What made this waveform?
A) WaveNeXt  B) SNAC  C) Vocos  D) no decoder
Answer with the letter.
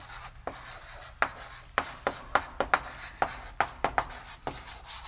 D